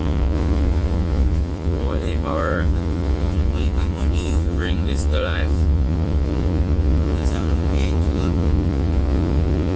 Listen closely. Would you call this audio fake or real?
fake